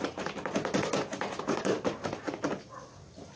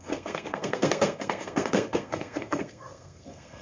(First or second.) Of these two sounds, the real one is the first